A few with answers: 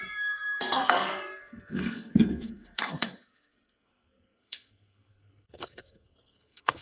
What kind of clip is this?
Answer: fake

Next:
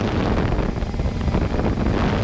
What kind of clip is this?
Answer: real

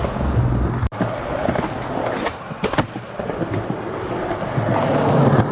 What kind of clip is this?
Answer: real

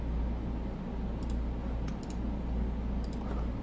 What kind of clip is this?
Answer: real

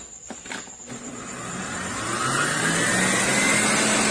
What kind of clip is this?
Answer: real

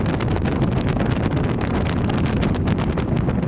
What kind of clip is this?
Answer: real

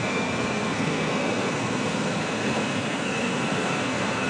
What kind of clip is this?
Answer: fake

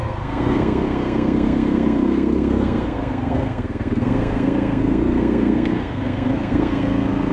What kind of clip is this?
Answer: fake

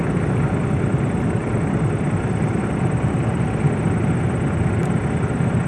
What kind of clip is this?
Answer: real